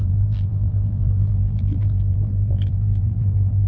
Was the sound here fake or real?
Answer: fake